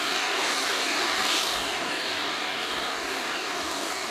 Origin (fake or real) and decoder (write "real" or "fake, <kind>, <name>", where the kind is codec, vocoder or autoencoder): fake, codec, DAC